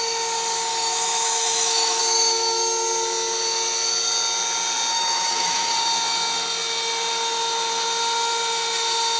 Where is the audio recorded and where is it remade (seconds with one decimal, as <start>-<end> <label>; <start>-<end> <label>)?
0.0-0.7 recorded; 0.7-2.0 remade; 2.0-4.9 recorded; 4.9-5.7 remade; 5.7-9.2 recorded